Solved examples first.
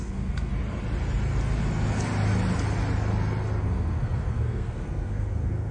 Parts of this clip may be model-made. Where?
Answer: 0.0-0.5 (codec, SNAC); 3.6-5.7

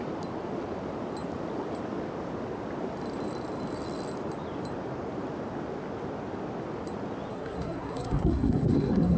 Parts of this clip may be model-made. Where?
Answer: 7.3-9.2 (codec, SNAC)

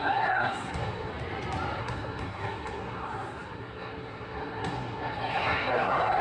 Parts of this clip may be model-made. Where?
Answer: 0.0-1.1 (codec, SNAC); 1.8-6.2

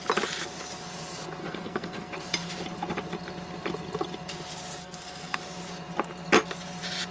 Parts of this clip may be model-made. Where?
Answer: 1.4-2.1 (codec, SNAC); 4.8-5.4